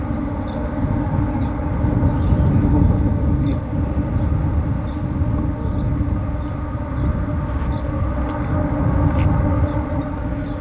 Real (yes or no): yes